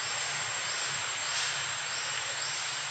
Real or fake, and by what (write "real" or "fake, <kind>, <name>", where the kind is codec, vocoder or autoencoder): real